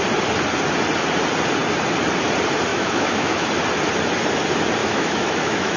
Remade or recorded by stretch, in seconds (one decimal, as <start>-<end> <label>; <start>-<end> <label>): 0.0-2.7 recorded; 2.7-3.5 remade; 3.5-4.8 recorded; 4.8-5.8 remade